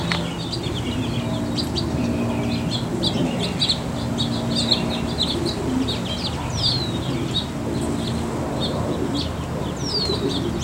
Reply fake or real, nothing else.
real